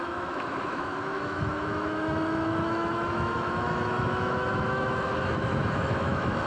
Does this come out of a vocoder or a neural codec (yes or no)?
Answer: yes